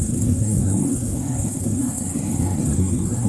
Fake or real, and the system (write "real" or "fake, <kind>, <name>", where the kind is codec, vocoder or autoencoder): fake, codec, SNAC